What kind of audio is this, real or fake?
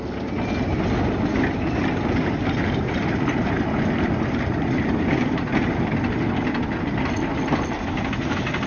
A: real